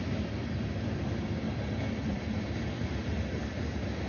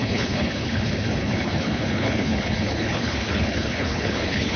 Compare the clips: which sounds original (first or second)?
first